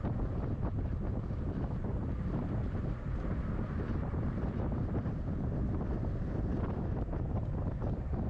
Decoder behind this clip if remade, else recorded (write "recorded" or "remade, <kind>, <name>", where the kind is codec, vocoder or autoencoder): remade, vocoder, BigVGAN v2